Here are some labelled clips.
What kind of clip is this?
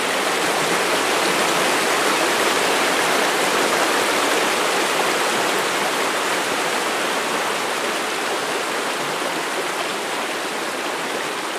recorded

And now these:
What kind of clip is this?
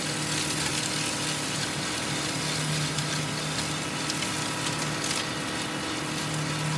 recorded